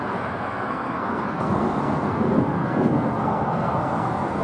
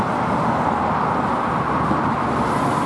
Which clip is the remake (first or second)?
first